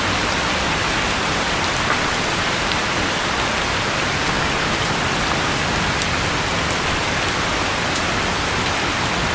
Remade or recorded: recorded